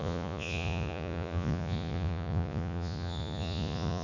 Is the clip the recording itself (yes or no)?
no